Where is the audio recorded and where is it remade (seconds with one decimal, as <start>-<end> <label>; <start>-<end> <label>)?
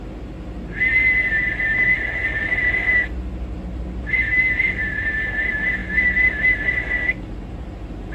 0.0-8.1 recorded